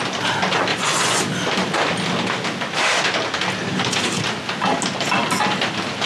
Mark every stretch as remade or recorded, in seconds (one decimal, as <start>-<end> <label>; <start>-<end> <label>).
0.0-0.7 recorded; 0.7-1.2 remade; 1.2-6.1 recorded